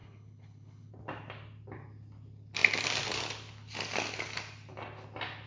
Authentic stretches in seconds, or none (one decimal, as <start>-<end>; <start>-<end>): 0.9-5.5